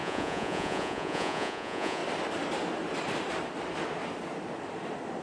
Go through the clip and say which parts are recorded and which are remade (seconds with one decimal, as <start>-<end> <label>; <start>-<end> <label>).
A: 0.0-2.0 remade; 2.0-5.2 recorded